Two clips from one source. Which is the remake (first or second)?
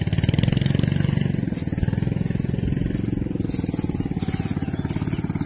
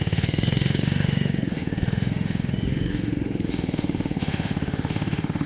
second